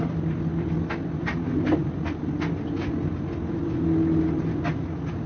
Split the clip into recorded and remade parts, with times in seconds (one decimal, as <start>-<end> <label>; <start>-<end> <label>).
0.0-5.3 recorded